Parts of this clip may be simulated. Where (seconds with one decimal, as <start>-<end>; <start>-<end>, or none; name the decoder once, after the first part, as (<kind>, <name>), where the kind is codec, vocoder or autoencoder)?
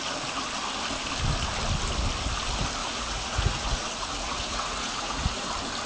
2.8-5.5 (vocoder, Vocos)